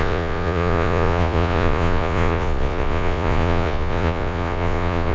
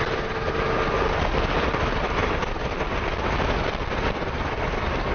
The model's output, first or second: first